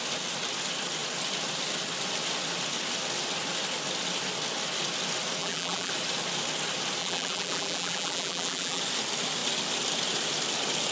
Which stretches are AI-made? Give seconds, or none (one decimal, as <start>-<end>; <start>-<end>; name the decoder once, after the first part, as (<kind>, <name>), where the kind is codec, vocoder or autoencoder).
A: 5.4-5.9 (vocoder, BigVGAN v2); 7.0-8.8